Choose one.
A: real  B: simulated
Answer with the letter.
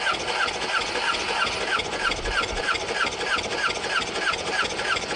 A